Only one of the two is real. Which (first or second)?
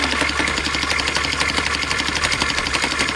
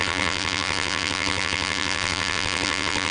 first